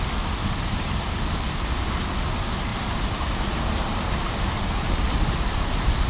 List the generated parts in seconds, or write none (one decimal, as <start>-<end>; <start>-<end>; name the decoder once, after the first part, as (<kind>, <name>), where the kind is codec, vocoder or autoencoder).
0.4-0.9 (vocoder, BigVGAN v2); 2.7-6.1